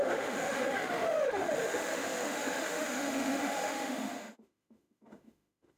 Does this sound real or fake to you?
fake